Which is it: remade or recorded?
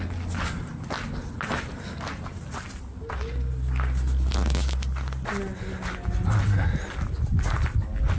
recorded